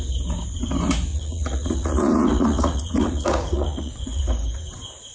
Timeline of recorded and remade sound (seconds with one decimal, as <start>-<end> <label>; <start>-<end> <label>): 0.0-1.1 recorded; 1.1-4.2 remade; 4.2-5.1 recorded